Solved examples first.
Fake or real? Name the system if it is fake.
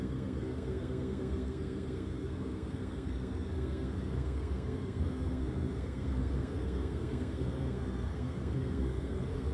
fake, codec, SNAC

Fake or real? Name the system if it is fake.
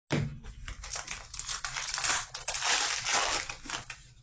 real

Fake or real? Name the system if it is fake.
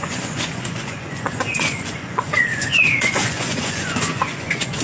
fake, vocoder, Vocos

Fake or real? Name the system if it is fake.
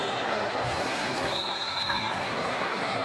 fake, codec, SNAC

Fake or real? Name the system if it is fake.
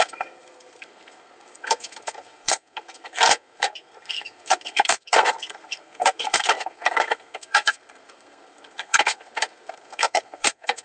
fake, codec, SNAC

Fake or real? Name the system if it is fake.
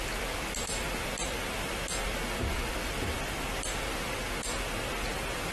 real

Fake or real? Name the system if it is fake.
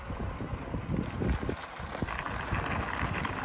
real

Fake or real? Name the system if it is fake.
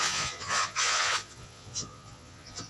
fake, vocoder, Vocos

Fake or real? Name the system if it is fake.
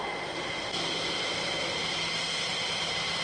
real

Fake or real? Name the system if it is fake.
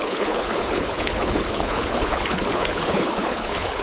fake, codec, HILCodec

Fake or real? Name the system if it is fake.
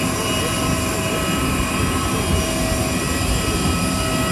real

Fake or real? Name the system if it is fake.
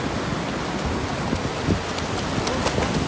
real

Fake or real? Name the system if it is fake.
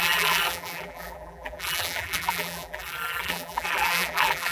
fake, vocoder, BigVGAN v2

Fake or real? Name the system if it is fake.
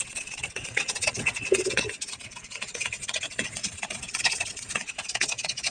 fake, vocoder, WaveNeXt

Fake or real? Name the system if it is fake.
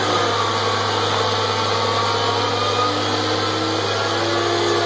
real